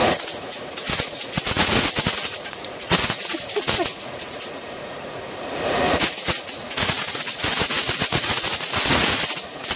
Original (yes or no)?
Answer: no